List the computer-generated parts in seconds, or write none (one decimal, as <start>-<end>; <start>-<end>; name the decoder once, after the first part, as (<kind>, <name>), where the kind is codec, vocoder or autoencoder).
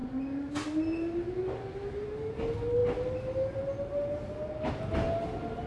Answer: none